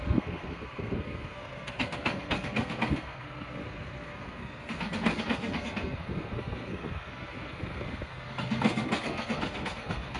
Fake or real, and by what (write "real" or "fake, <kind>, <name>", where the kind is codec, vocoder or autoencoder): fake, codec, SNAC